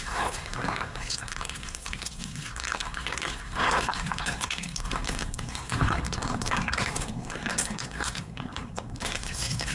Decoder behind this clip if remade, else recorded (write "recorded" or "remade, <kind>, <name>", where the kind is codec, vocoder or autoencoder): remade, codec, SNAC